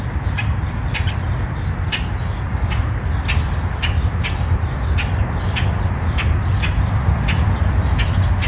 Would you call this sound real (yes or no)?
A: yes